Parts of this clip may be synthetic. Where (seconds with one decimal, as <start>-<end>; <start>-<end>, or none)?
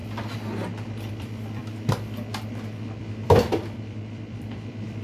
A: 1.1-1.6; 3.0-5.0